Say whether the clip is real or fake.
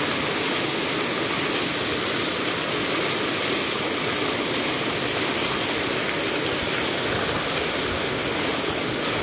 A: real